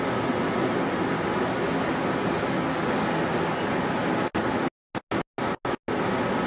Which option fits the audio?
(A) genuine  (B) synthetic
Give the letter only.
A